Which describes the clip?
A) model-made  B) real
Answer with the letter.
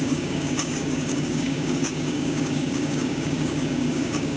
A